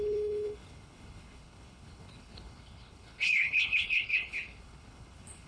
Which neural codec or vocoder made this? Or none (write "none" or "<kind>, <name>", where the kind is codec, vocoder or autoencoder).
codec, HILCodec